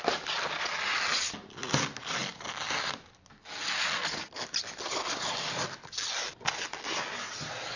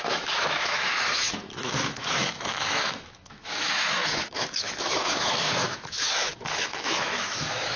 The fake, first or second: second